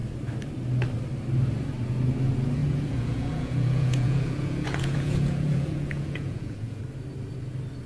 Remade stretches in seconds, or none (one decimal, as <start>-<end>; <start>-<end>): 2.6-6.8